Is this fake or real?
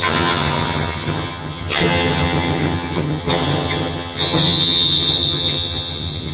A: fake